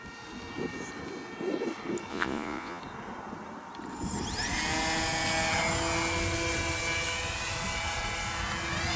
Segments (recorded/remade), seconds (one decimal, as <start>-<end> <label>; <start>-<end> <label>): 0.0-2.1 recorded; 2.1-2.8 remade; 2.8-9.0 recorded